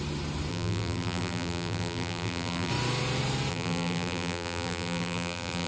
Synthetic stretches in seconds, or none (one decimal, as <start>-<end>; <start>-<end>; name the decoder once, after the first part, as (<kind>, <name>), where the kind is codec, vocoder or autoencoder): 0.5-2.7 (vocoder, BigVGAN v2); 3.5-5.7